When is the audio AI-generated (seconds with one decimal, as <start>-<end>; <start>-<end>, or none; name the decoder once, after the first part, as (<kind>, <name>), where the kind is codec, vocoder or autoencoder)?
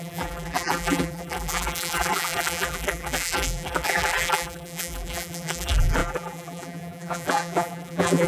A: 0.0-8.3 (vocoder, BigVGAN v2)